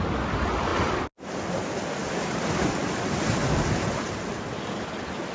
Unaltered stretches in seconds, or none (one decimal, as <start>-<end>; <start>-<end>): 0.0-2.0

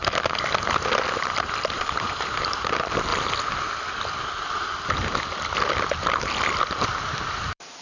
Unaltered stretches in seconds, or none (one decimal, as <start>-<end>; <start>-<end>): 0.0-1.2; 3.1-6.7

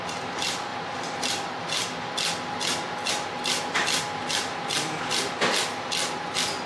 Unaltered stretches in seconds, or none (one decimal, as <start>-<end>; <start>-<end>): 0.0-6.7

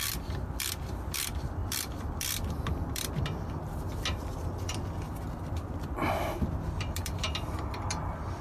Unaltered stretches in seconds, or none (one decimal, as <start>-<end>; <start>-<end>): 0.0-8.4

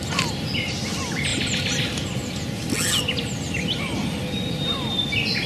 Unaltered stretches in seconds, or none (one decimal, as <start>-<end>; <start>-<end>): 0.0-5.5

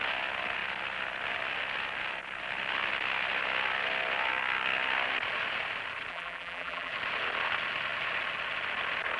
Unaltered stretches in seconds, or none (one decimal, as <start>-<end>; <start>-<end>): 0.0-6.1; 6.9-9.2

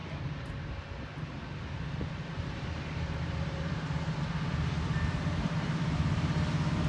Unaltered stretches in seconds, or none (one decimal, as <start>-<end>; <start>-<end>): none